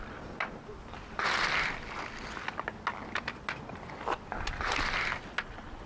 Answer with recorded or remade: recorded